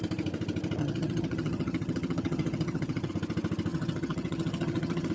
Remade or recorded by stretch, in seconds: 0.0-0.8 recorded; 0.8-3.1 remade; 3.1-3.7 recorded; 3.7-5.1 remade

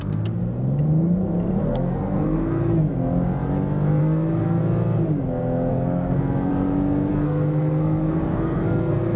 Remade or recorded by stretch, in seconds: 0.0-0.4 remade; 0.4-1.6 recorded; 1.6-2.7 remade; 2.7-4.0 recorded; 4.0-4.6 remade; 4.6-5.7 recorded; 5.7-6.5 remade; 6.5-7.1 recorded; 7.1-9.2 remade

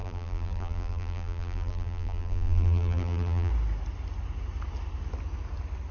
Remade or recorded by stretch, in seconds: 0.0-3.5 remade; 3.5-5.9 recorded

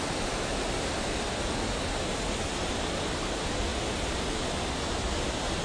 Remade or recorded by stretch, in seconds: 0.0-0.5 remade; 0.5-2.8 recorded; 2.8-3.7 remade; 3.7-4.3 recorded; 4.3-5.6 remade

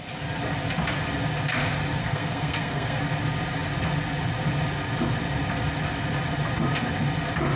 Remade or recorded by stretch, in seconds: 0.0-2.0 recorded; 2.0-3.0 remade; 3.0-7.6 recorded

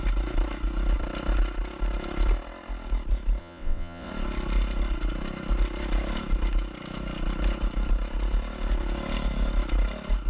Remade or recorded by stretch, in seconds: 0.0-3.4 recorded; 3.4-4.1 remade; 4.1-10.3 recorded